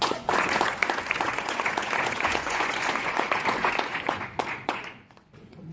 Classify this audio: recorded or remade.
remade